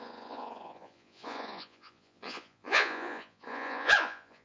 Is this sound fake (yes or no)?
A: yes